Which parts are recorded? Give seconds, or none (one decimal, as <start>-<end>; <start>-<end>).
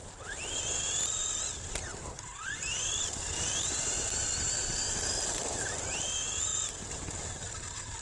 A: 0.0-1.9; 6.0-8.0